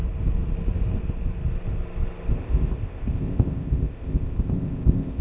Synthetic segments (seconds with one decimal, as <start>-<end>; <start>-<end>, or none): 2.4-5.2